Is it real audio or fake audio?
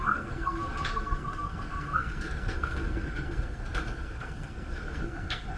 fake